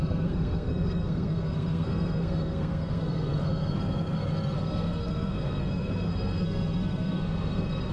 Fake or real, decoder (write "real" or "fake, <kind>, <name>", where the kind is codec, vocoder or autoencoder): fake, codec, SNAC